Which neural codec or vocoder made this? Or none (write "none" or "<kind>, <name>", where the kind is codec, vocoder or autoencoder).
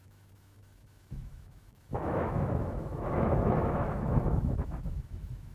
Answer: autoencoder, DAC-VAE